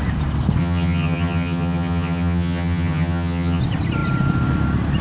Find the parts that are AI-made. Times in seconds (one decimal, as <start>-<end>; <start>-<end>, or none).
0.6-3.6